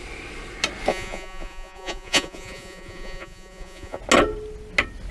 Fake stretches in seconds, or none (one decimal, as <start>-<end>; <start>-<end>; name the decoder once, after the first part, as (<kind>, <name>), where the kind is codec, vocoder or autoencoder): 0.9-4.0 (vocoder, Vocos)